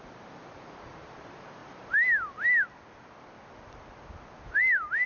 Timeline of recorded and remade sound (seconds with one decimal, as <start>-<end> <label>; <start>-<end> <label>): 0.0-5.1 recorded